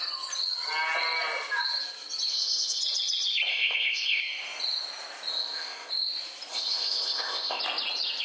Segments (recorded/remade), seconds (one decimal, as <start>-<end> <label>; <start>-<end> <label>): 0.0-2.3 recorded; 2.3-2.8 remade; 2.8-3.5 recorded; 3.5-4.2 remade; 4.2-5.3 recorded; 5.3-5.9 remade; 5.9-6.5 recorded; 6.5-7.6 remade; 7.6-8.2 recorded